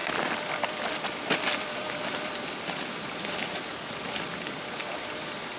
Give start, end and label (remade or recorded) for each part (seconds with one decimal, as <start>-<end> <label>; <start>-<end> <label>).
0.0-5.6 recorded